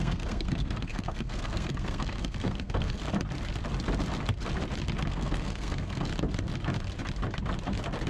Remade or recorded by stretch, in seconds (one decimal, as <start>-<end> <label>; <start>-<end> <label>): 0.0-3.0 remade; 3.0-5.1 recorded; 5.1-6.1 remade; 6.1-8.1 recorded